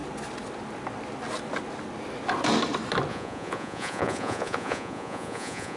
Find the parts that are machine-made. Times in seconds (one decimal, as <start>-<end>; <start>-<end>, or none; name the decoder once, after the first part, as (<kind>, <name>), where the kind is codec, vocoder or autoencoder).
3.1-5.8 (vocoder, Vocos)